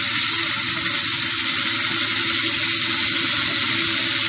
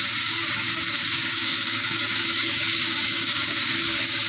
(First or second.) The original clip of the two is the first